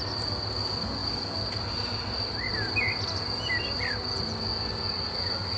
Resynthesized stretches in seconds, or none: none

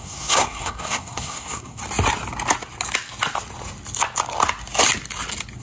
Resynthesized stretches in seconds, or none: 0.0-1.8 (codec, SNAC)

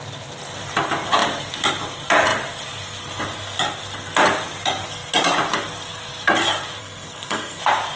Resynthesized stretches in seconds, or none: 6.8-7.6 (codec, SNAC)

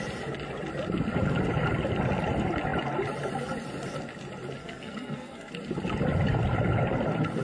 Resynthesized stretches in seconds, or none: 4.6-5.5 (codec, SNAC)

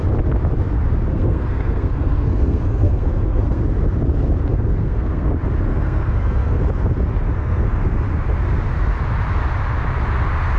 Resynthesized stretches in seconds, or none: 1.1-3.6 (codec, SNAC); 4.5-5.3; 5.7-6.6; 7.3-7.8